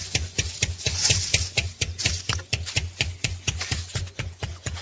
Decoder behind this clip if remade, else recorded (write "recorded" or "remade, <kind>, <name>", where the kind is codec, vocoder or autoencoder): remade, vocoder, Vocos